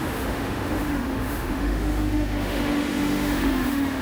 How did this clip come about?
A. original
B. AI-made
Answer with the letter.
B